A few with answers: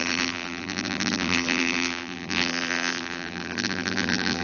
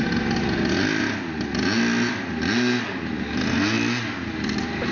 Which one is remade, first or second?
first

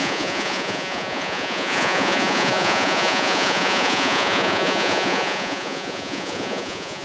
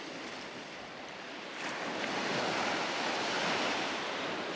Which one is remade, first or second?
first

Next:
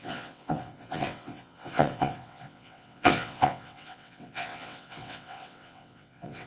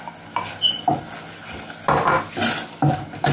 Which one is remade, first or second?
first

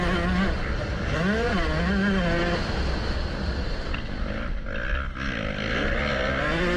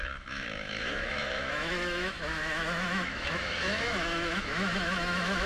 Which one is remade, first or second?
second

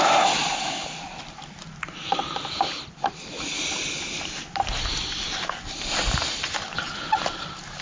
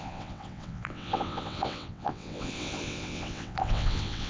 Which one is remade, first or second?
second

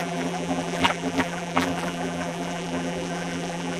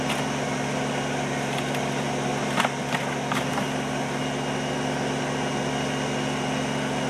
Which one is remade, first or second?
first